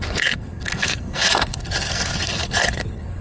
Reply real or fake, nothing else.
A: fake